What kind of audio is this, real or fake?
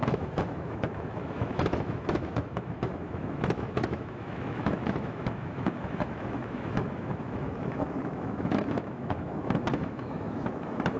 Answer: fake